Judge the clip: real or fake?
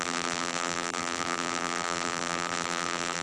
fake